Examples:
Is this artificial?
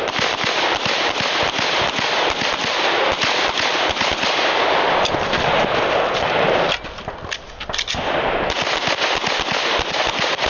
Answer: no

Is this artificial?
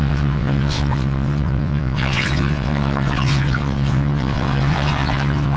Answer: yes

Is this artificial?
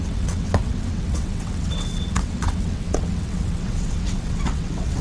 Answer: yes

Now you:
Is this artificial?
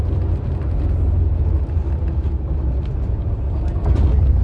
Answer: no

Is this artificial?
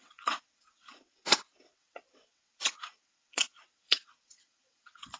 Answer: yes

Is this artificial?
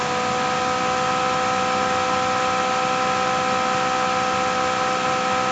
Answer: no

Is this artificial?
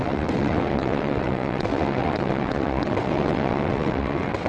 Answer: yes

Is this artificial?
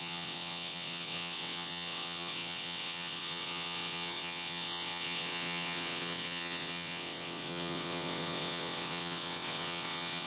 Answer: yes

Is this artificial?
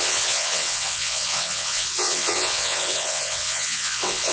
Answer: yes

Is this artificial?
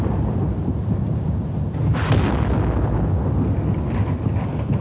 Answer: no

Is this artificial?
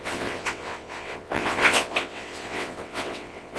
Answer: yes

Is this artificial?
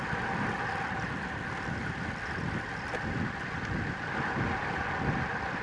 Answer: no